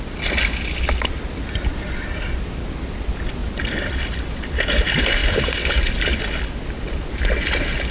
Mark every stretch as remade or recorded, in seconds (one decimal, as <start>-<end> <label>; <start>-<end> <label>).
0.0-3.4 recorded; 3.4-4.7 remade; 4.7-5.2 recorded; 5.2-5.8 remade; 5.8-7.9 recorded